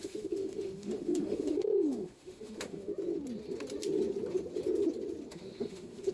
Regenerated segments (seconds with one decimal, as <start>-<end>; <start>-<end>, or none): 0.0-2.9; 5.3-6.1